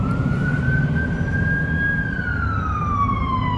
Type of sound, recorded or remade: recorded